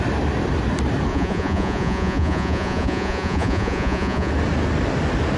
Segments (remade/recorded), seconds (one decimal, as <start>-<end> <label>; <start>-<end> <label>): 0.0-1.1 recorded; 1.1-4.3 remade; 4.3-5.4 recorded